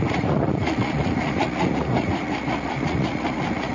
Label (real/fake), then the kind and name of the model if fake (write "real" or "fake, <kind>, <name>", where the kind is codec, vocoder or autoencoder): fake, vocoder, Vocos